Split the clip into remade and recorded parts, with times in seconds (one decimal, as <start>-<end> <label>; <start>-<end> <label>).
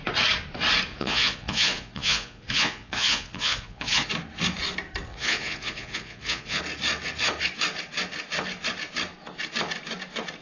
0.0-0.9 recorded; 0.9-4.1 remade; 4.1-5.1 recorded; 5.1-6.6 remade; 6.6-10.4 recorded